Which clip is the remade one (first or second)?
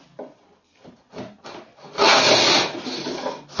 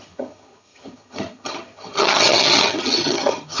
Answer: second